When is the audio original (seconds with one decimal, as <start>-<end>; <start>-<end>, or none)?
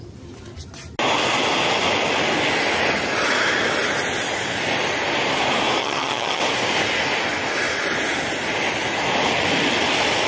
0.0-5.8; 6.4-10.3